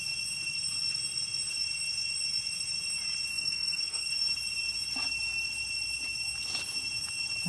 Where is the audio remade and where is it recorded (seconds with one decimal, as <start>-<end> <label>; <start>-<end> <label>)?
0.0-3.3 recorded; 3.3-4.1 remade; 4.1-7.5 recorded